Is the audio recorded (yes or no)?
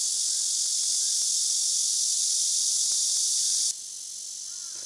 yes